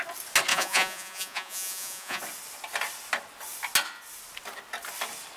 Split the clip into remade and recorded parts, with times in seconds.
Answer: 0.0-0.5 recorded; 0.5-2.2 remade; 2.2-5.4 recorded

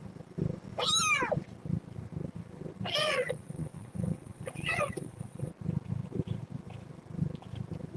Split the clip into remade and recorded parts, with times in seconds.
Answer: 0.0-3.0 recorded; 3.0-5.5 remade; 5.5-8.0 recorded

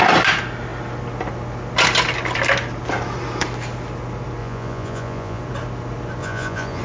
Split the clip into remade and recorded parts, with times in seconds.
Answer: 0.0-4.4 recorded; 4.4-5.4 remade; 5.4-6.2 recorded; 6.2-6.8 remade

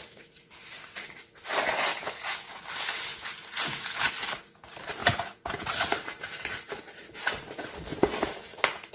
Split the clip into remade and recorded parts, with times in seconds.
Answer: 0.0-1.9 recorded; 1.9-2.6 remade; 2.6-3.1 recorded; 3.1-4.1 remade; 4.1-5.0 recorded; 5.0-5.7 remade; 5.7-7.9 recorded; 7.9-8.9 remade

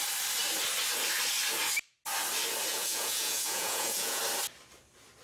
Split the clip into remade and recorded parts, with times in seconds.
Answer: 0.0-2.7 recorded; 2.7-4.2 remade; 4.2-5.2 recorded

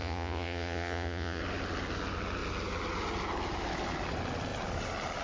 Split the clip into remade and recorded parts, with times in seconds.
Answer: 0.0-1.4 remade; 1.4-5.2 recorded

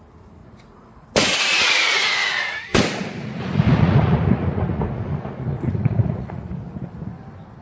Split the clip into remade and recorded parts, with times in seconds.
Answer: 0.0-0.4 recorded; 0.4-2.8 remade; 2.8-3.2 recorded; 3.2-6.5 remade; 6.5-7.6 recorded